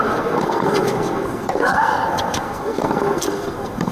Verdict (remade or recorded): remade